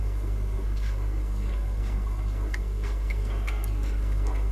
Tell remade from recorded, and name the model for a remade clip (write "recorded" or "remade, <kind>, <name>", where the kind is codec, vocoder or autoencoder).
remade, codec, SNAC